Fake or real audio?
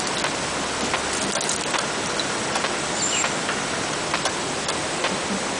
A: real